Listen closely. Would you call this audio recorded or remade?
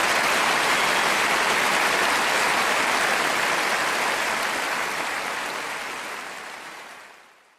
recorded